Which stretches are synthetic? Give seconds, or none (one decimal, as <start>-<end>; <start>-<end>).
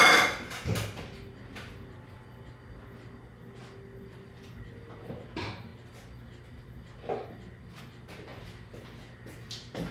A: none